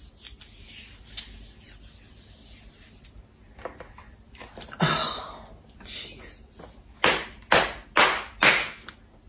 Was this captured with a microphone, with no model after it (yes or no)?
yes